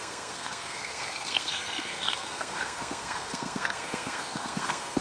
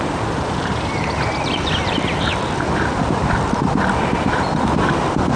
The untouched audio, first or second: second